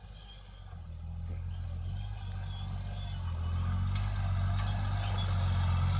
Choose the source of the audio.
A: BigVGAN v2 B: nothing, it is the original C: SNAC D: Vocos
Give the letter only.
B